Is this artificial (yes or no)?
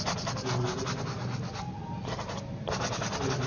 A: no